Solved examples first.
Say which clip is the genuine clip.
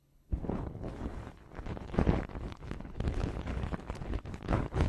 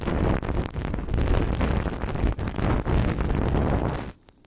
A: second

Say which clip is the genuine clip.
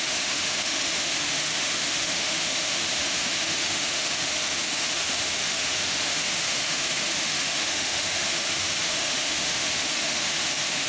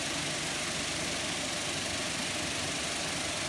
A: second